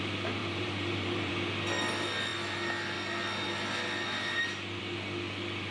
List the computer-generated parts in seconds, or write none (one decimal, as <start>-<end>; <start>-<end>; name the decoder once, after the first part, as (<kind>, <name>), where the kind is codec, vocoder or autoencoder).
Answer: 0.4-1.3 (vocoder, BigVGAN v2)